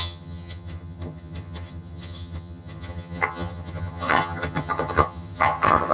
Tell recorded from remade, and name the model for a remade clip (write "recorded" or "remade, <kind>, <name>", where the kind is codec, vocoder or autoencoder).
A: remade, vocoder, HiFi-GAN